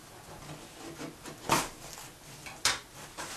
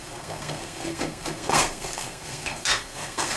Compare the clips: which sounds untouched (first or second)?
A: first